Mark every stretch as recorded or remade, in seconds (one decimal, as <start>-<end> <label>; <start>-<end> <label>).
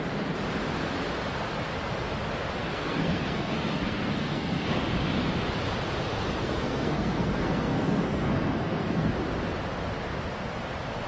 0.0-2.6 recorded; 2.6-4.9 remade; 4.9-6.4 recorded; 6.4-9.1 remade; 9.1-11.1 recorded